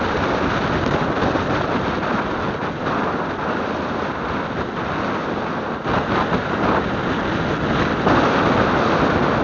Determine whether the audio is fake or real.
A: real